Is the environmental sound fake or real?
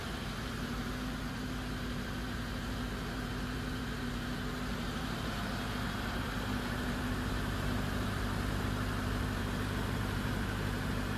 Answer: fake